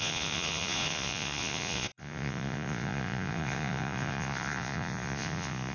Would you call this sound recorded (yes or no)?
no